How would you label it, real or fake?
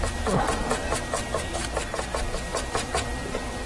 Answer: real